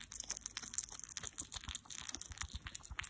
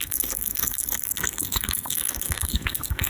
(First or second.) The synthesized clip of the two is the second